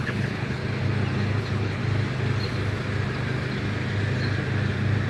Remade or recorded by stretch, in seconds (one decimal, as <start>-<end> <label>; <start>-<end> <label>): 0.0-0.6 remade; 0.6-1.4 recorded; 1.4-1.8 remade; 1.8-5.1 recorded

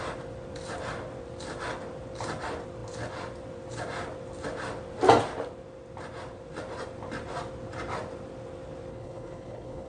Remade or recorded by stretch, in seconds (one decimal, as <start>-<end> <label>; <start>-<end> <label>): 0.0-8.9 recorded; 8.9-9.9 remade

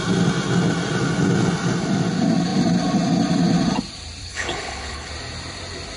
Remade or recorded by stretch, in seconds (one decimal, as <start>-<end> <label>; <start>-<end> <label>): 0.0-4.2 recorded; 4.2-5.1 remade; 5.1-6.0 recorded

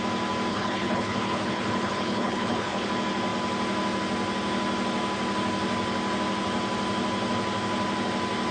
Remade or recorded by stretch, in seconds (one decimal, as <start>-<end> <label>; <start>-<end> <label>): 0.0-0.5 recorded; 0.5-2.9 remade; 2.9-8.5 recorded

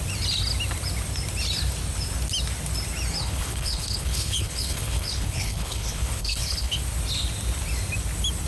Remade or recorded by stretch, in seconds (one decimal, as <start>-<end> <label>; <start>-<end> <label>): 0.0-3.2 recorded; 3.2-6.8 remade; 6.8-8.5 recorded

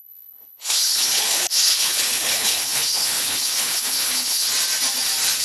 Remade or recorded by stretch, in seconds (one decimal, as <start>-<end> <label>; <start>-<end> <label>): 0.0-4.5 remade; 4.5-5.4 recorded